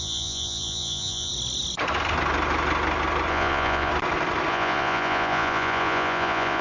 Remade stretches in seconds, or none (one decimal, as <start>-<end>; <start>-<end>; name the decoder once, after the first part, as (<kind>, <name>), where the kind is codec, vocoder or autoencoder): 0.0-1.3 (vocoder, Vocos); 3.3-3.9; 4.5-6.6